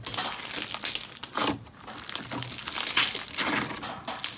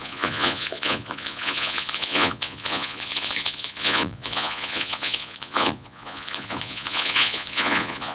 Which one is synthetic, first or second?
second